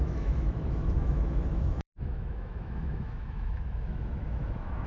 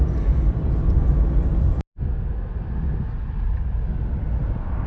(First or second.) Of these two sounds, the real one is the second